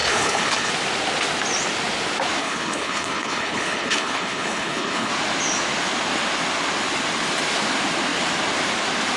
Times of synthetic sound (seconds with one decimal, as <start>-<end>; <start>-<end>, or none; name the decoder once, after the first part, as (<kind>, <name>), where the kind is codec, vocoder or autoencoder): 0.0-0.7 (codec, HILCodec); 2.4-5.1